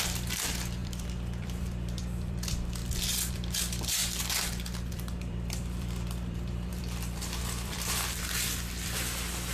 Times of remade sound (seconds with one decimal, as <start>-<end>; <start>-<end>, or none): 0.0-2.8; 3.3-4.0; 4.9-9.5